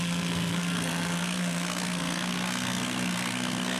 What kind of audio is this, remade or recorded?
remade